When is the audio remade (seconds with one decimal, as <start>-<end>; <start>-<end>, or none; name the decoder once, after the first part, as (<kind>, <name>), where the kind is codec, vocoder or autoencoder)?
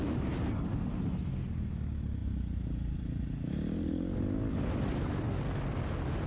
0.0-0.8 (vocoder, BigVGAN v2); 2.2-4.2